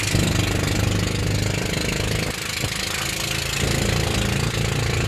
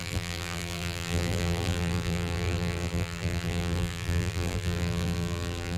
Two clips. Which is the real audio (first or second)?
first